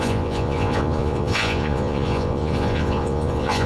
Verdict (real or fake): fake